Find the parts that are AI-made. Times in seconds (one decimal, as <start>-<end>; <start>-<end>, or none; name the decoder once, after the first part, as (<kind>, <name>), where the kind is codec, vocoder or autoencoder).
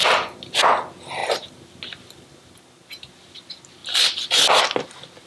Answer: none